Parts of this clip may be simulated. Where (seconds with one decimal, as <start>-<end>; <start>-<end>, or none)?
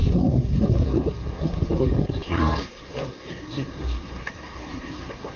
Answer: 0.0-5.4